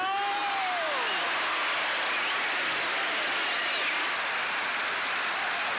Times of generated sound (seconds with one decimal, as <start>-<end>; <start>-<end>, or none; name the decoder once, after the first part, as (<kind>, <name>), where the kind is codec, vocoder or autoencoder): none